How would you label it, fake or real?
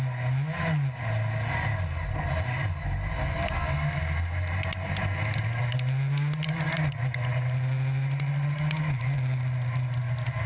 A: real